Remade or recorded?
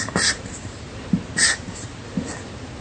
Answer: recorded